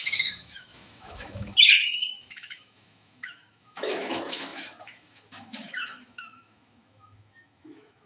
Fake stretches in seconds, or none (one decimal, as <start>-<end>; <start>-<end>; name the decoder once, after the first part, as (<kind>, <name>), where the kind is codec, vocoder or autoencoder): 0.0-8.1 (autoencoder, DAC-VAE)